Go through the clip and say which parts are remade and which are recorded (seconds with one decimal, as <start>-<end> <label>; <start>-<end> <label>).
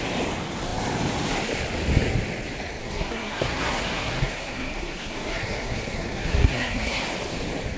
0.0-2.8 recorded; 2.8-7.0 remade; 7.0-7.8 recorded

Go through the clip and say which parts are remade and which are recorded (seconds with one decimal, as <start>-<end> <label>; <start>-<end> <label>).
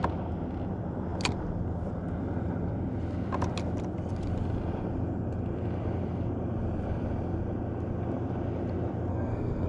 0.0-9.1 recorded; 9.1-9.7 remade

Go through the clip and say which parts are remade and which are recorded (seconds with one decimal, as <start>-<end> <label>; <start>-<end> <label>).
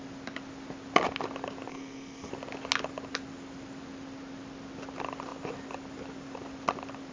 0.0-1.7 recorded; 1.7-2.3 remade; 2.3-7.1 recorded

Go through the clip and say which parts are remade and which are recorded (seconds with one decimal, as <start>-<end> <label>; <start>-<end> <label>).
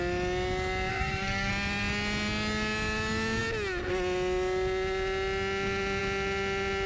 0.0-0.9 recorded; 0.9-1.5 remade; 1.5-6.9 recorded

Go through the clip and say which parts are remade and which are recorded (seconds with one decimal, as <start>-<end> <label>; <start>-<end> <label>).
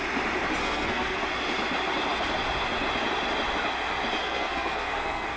0.0-0.6 recorded; 0.6-1.2 remade; 1.2-4.2 recorded; 4.2-5.4 remade